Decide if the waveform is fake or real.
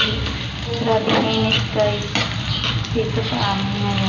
real